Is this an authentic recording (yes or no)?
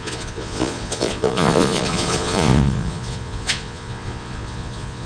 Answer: no